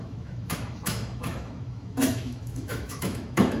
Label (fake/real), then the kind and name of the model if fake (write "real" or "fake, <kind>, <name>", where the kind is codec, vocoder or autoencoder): fake, autoencoder, DAC-VAE